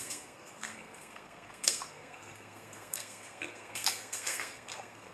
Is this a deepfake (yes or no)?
yes